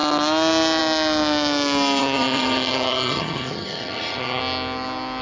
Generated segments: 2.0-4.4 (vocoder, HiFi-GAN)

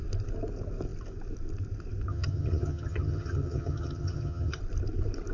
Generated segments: 2.1-4.6 (vocoder, HiFi-GAN)

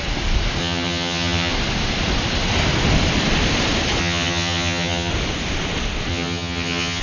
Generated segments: 0.6-1.5 (vocoder, HiFi-GAN); 4.0-5.1; 6.1-7.0

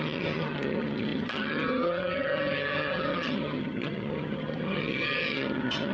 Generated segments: 0.0-5.9 (vocoder, HiFi-GAN)

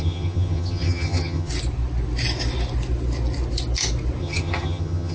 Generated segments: 0.0-1.5 (vocoder, HiFi-GAN); 4.2-5.1